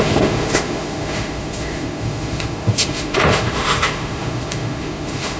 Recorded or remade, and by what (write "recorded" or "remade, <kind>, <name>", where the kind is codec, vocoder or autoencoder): remade, autoencoder, DAC-VAE